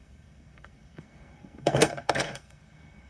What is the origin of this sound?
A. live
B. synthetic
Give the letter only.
B